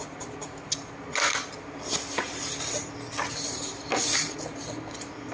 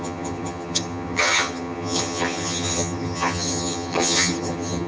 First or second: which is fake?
second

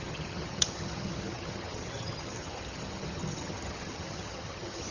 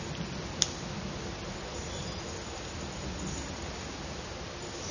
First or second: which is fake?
first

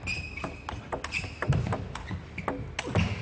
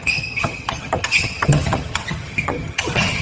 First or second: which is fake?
second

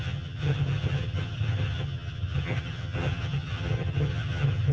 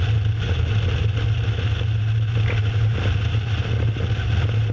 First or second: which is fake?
first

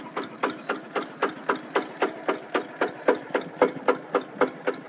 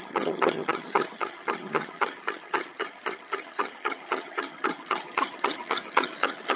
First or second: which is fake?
second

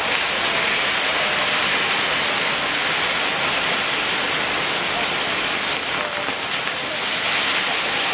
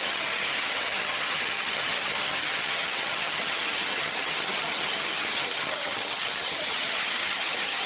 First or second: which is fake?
second